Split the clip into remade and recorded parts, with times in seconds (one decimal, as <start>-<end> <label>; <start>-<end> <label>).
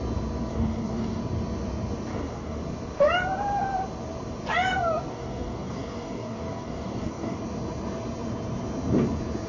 0.0-0.5 recorded; 0.5-1.2 remade; 1.2-2.1 recorded; 2.1-2.6 remade; 2.6-5.1 recorded; 5.1-7.4 remade; 7.4-9.5 recorded